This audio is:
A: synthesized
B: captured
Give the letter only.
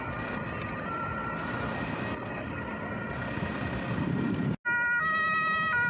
B